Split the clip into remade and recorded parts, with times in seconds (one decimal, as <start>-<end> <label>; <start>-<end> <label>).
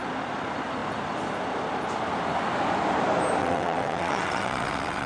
0.0-3.4 recorded; 3.4-5.1 remade